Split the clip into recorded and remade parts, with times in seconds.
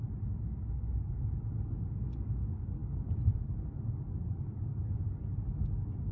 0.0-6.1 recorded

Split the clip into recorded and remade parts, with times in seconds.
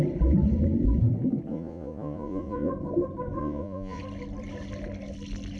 0.0-1.5 recorded; 1.5-2.7 remade; 2.7-3.4 recorded; 3.4-4.0 remade; 4.0-5.6 recorded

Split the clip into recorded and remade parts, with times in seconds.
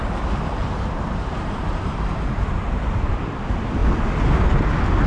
0.0-3.1 remade; 3.1-5.1 recorded